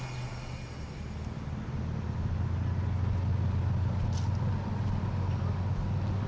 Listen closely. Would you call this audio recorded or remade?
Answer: recorded